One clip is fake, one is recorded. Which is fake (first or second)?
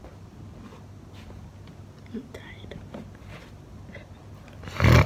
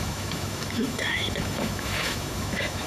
second